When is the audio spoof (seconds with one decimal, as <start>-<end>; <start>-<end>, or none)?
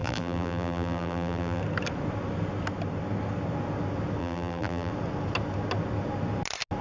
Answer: 0.0-1.6; 4.2-4.9